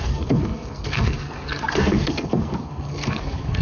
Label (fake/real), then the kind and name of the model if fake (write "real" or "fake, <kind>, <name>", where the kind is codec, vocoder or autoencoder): fake, codec, SNAC